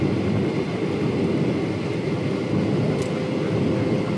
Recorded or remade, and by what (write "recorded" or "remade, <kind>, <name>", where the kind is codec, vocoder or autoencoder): recorded